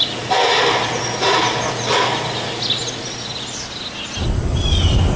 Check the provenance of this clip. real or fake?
real